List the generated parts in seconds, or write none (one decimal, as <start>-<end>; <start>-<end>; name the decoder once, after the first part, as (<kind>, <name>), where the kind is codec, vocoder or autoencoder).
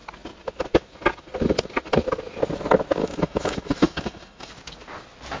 3.0-4.5 (autoencoder, DAC-VAE)